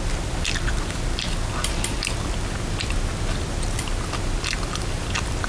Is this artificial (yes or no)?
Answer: no